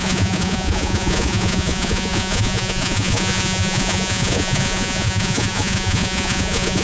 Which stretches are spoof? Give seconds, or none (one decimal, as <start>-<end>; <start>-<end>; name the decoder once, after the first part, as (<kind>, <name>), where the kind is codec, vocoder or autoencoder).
0.0-6.8 (vocoder, Vocos)